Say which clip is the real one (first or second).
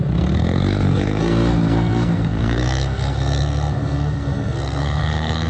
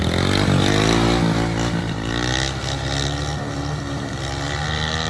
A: second